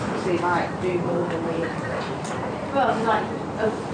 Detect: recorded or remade remade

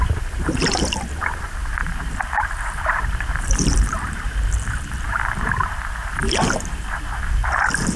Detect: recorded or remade remade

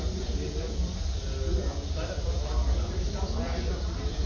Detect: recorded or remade remade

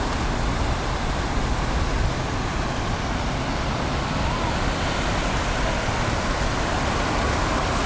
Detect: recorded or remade recorded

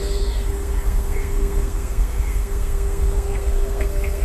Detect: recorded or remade remade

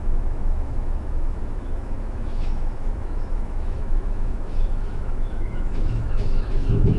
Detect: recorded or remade remade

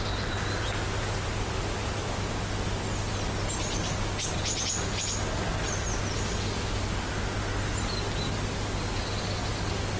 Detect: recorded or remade recorded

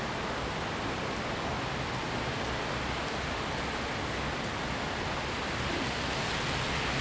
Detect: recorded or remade recorded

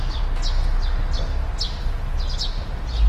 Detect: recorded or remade recorded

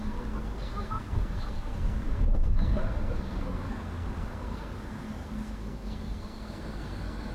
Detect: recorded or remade remade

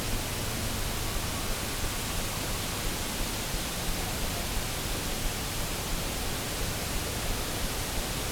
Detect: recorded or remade recorded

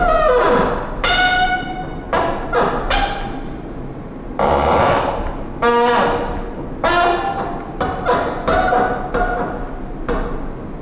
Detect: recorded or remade recorded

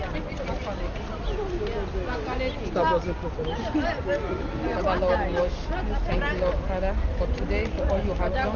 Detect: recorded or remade recorded